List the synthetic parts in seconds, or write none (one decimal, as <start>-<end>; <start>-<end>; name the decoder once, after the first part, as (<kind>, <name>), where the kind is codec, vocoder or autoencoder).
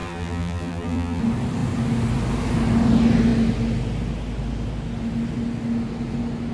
0.0-1.2 (vocoder, BigVGAN v2)